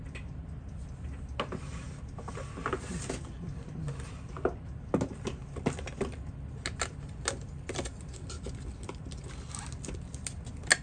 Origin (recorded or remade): recorded